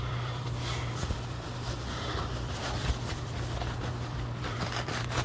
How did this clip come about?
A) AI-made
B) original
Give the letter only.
A